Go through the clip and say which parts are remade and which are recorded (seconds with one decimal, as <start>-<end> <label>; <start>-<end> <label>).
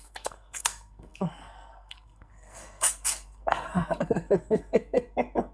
0.0-5.5 remade